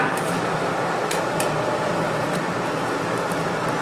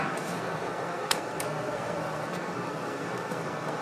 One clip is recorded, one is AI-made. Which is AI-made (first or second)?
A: second